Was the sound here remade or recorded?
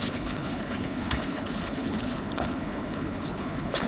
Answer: remade